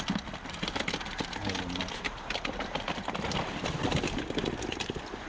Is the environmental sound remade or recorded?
recorded